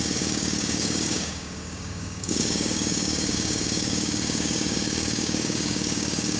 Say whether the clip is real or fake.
fake